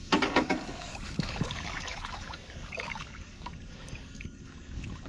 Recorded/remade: remade